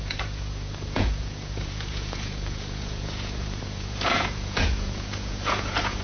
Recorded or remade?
remade